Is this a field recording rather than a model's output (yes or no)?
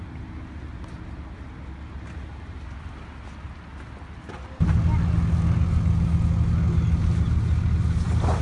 yes